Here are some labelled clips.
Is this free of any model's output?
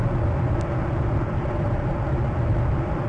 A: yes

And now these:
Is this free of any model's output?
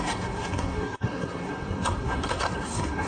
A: no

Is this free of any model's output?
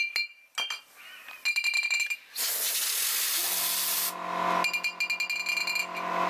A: yes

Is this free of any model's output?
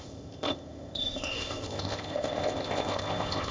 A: no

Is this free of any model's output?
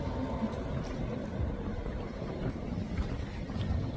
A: yes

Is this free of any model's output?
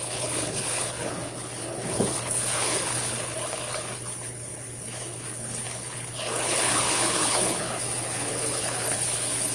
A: no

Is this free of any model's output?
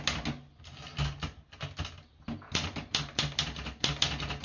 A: yes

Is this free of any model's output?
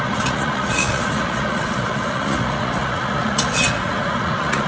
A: no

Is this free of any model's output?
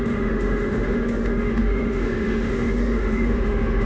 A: no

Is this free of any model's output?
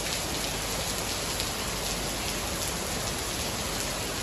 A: yes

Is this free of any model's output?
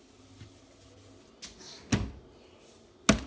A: yes